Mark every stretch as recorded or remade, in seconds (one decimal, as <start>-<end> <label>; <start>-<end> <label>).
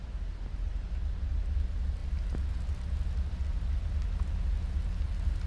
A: 0.0-5.5 recorded